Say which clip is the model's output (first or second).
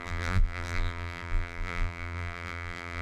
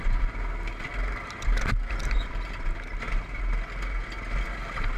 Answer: first